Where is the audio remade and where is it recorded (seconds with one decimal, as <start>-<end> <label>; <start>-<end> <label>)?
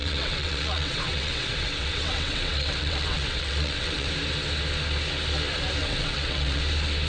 0.0-4.1 remade; 4.1-5.8 recorded; 5.8-6.6 remade; 6.6-7.1 recorded